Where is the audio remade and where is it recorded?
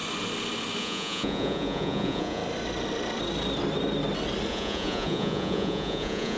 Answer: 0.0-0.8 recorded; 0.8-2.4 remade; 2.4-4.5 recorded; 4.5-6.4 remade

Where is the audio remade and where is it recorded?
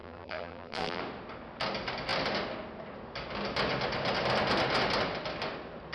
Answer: 0.0-1.0 remade; 1.0-5.9 recorded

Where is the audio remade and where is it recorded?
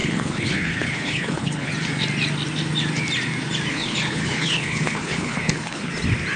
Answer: 0.0-1.7 remade; 1.7-3.7 recorded; 3.7-5.9 remade; 5.9-6.4 recorded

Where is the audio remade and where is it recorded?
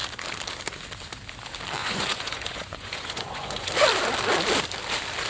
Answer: 0.0-1.8 recorded; 1.8-3.7 remade; 3.7-5.3 recorded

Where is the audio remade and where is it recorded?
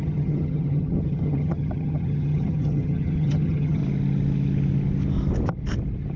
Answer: 0.0-3.8 remade; 3.8-6.2 recorded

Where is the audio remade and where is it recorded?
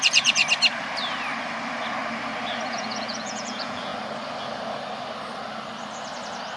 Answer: 0.0-0.4 remade; 0.4-2.7 recorded; 2.7-3.9 remade; 3.9-6.6 recorded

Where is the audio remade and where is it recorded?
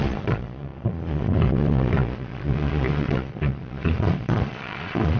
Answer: 0.0-5.2 remade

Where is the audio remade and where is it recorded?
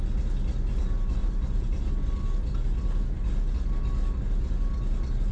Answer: 0.0-1.2 recorded; 1.2-1.9 remade; 1.9-5.3 recorded